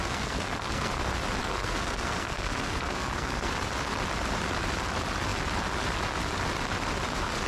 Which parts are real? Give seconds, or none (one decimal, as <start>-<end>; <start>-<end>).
0.9-1.4; 3.5-7.5

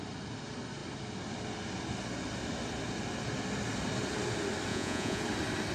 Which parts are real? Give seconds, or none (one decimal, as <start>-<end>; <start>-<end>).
0.0-4.7; 5.2-5.7

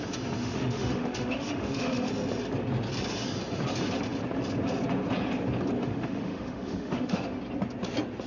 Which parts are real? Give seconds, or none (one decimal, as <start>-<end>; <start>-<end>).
0.0-0.4; 2.1-5.8; 7.4-8.3